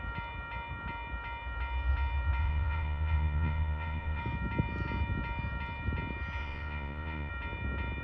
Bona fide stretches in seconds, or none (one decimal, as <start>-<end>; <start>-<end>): 0.0-2.4; 4.2-6.4; 7.3-8.0